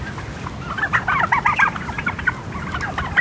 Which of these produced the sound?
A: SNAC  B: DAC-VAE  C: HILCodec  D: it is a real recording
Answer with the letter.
D